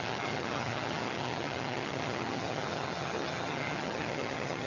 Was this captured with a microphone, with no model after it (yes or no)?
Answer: no